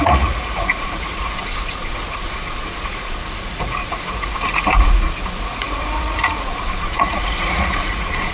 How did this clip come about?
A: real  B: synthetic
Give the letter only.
B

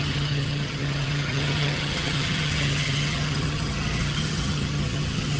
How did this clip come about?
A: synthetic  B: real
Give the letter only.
A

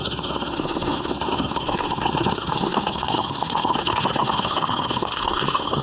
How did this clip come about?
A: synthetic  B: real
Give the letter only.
A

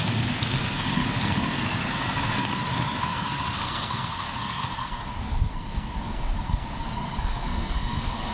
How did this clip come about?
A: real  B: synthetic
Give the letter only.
B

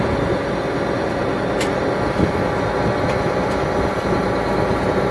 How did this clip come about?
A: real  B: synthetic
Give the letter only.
A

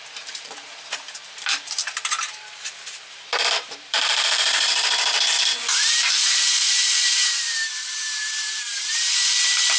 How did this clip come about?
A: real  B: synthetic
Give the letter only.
B